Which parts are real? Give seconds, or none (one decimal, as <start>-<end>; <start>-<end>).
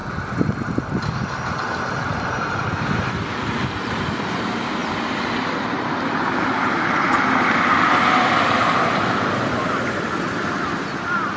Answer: 0.0-0.8